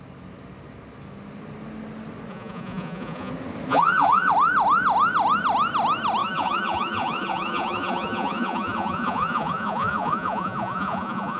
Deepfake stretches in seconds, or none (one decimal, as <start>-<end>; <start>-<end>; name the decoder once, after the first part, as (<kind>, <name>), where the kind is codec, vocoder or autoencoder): 2.3-3.3 (vocoder, Vocos); 3.7-4.3; 6.2-11.4